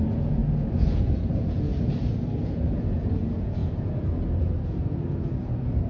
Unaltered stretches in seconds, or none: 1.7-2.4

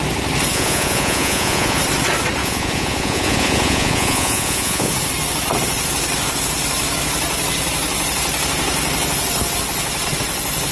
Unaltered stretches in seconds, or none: 0.0-0.5; 1.8-2.4; 4.9-10.7

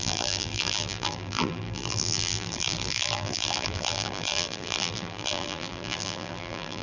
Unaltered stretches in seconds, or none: none

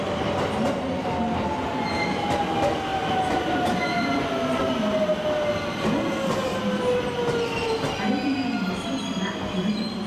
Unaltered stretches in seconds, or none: 0.0-10.1

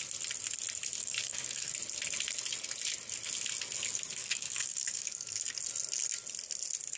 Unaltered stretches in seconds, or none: 0.0-1.0; 1.7-4.2; 5.6-7.0

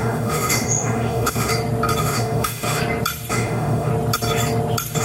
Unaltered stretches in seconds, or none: 1.5-2.0; 2.8-3.3; 3.9-5.0

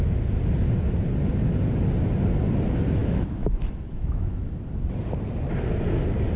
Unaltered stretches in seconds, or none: 0.0-3.0; 4.5-6.4